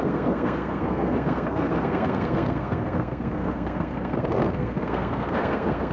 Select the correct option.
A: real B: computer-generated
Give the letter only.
B